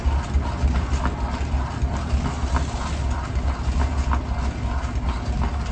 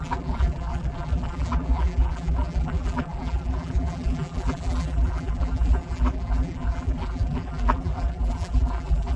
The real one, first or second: first